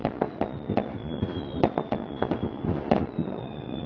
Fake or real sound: fake